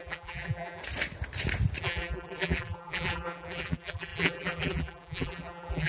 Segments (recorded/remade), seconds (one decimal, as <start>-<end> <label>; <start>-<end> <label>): 0.0-0.8 remade; 0.8-1.8 recorded; 1.8-5.9 remade